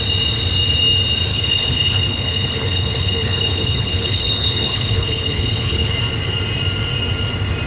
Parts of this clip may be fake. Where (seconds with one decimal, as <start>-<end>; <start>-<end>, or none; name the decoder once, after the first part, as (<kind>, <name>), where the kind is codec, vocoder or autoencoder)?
1.3-5.9 (codec, HILCodec)